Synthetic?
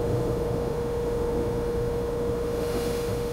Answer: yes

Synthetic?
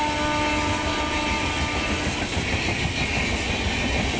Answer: no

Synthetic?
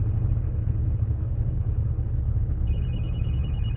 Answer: yes